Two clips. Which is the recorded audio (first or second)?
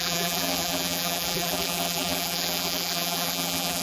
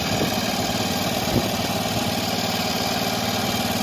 second